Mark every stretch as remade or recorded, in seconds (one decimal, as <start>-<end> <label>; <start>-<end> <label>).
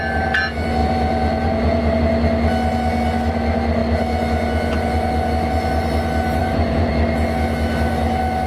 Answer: 0.0-0.8 recorded; 0.8-2.0 remade; 2.0-6.4 recorded; 6.4-6.9 remade; 6.9-8.5 recorded